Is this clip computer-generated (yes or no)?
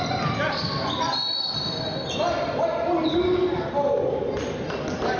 no